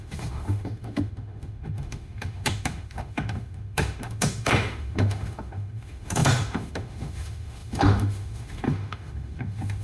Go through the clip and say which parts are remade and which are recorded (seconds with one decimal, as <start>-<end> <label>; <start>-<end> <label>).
0.0-9.8 remade